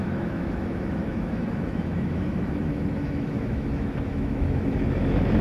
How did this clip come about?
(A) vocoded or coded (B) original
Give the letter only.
A